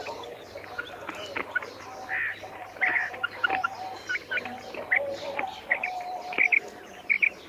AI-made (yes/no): no